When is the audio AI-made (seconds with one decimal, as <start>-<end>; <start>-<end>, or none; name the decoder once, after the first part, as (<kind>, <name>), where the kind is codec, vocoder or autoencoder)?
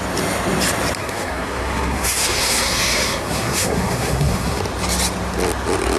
1.0-4.6 (codec, SNAC)